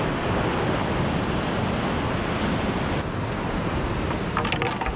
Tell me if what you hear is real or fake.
real